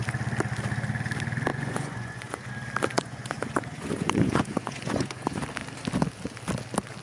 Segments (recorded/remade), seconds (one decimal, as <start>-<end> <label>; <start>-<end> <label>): 0.0-1.5 recorded; 1.5-2.5 remade; 2.5-2.9 recorded; 2.9-5.4 remade; 5.4-7.0 recorded